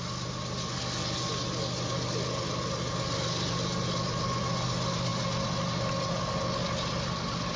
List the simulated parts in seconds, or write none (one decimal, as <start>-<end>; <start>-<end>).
none